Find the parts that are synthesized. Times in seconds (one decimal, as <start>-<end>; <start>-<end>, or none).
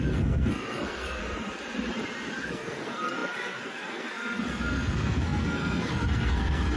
0.0-1.2; 2.4-6.8